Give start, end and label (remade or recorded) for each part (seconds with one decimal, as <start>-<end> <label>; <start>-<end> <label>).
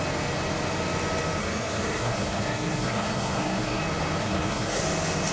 0.0-1.4 recorded; 1.4-3.8 remade; 3.8-4.2 recorded; 4.2-4.8 remade; 4.8-5.3 recorded